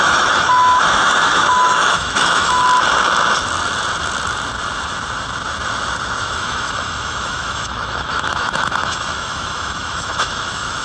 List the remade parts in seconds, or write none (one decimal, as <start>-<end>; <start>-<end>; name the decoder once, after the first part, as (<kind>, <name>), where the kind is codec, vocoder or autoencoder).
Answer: 0.0-2.6 (autoencoder, DAC-VAE); 6.2-10.8